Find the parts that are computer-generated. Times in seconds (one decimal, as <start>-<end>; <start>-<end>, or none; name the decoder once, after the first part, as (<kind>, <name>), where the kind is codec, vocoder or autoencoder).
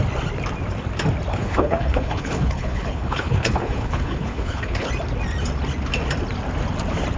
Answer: 1.3-4.9 (codec, HILCodec)